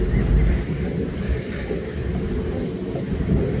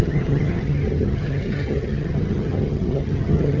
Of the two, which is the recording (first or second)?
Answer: first